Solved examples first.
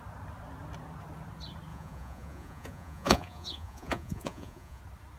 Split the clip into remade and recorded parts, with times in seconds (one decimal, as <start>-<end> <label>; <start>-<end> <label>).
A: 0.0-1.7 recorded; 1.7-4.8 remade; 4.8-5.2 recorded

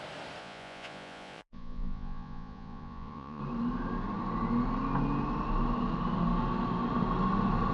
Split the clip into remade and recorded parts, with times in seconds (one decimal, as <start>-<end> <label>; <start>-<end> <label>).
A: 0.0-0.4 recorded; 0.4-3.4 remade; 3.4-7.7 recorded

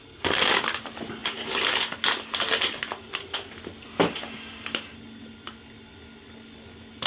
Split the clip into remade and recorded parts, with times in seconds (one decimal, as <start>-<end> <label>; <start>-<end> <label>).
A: 0.0-7.1 recorded

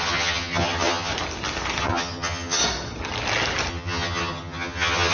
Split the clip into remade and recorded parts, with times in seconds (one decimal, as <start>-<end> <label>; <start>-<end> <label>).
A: 0.0-1.1 remade; 1.1-1.8 recorded; 1.8-2.6 remade; 2.6-3.7 recorded; 3.7-5.1 remade

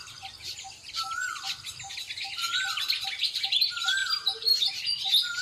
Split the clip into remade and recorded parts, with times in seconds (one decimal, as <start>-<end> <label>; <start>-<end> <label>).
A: 0.0-5.4 recorded

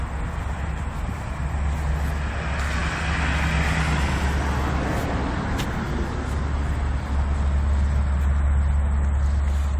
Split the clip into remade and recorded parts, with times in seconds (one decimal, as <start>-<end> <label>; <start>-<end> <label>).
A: 0.0-9.8 recorded

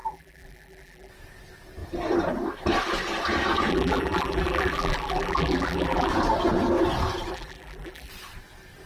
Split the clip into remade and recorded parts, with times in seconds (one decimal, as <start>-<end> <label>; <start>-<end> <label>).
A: 0.0-1.1 remade; 1.1-3.7 recorded; 3.7-6.1 remade; 6.1-7.3 recorded; 7.3-8.1 remade; 8.1-8.9 recorded

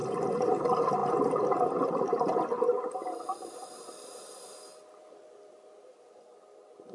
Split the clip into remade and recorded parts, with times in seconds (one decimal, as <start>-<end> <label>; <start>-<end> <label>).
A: 0.0-6.9 recorded